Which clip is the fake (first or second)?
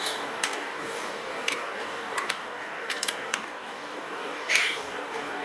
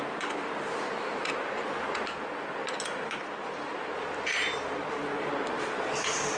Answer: first